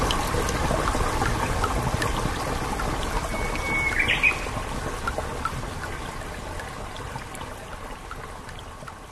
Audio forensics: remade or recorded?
recorded